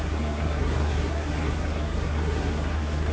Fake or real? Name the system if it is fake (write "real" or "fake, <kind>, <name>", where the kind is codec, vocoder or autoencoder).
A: fake, codec, SNAC